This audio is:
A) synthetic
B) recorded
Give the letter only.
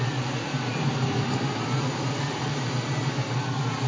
B